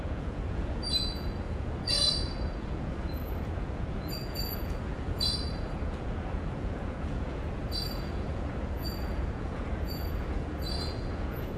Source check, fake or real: fake